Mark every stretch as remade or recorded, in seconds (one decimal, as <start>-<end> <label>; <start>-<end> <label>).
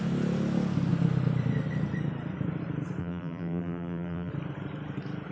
0.0-3.0 recorded; 3.0-4.3 remade; 4.3-5.3 recorded